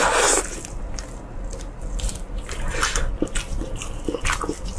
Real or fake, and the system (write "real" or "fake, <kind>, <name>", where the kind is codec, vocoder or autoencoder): real